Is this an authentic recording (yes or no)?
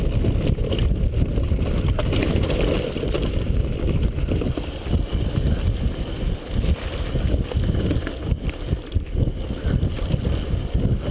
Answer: yes